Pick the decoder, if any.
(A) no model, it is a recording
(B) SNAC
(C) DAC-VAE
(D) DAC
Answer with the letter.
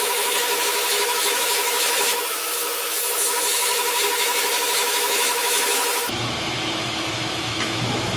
C